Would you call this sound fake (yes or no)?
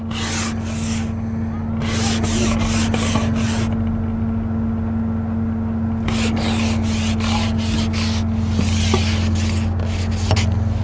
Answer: no